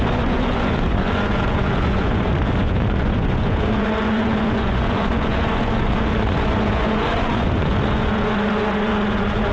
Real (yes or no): no